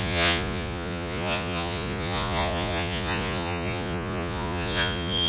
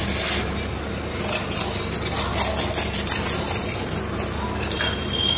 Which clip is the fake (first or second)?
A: first